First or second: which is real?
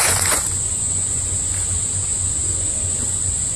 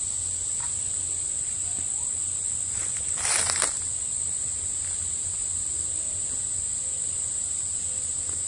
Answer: second